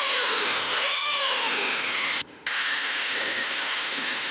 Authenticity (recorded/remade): remade